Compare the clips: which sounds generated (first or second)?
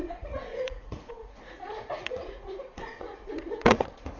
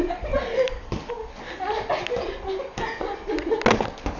first